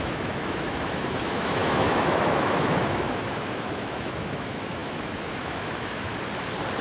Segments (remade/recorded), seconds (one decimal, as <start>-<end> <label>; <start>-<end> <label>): 0.0-6.1 remade; 6.1-6.8 recorded